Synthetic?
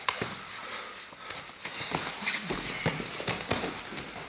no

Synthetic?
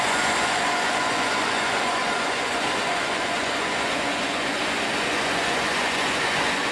yes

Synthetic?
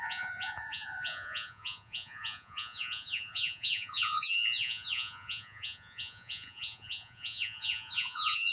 yes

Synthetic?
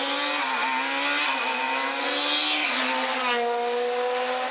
no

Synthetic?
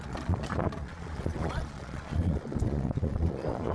yes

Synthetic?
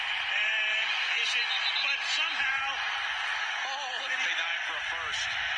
no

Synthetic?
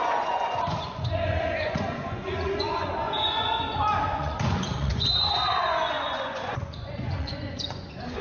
yes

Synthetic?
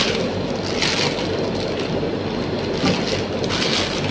no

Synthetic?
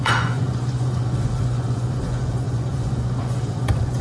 yes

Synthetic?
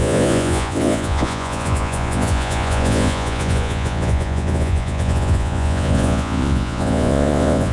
yes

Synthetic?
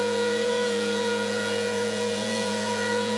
yes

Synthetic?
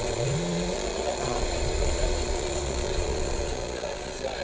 yes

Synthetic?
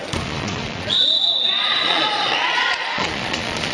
yes